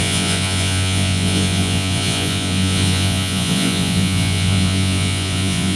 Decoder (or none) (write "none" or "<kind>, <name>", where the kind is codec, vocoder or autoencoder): vocoder, Vocos